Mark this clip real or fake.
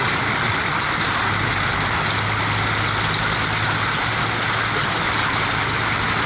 real